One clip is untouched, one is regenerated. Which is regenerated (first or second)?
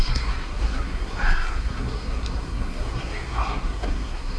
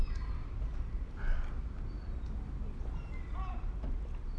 first